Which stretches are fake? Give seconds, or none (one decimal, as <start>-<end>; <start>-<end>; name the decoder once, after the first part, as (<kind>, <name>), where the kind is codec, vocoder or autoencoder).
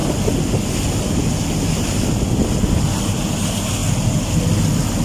none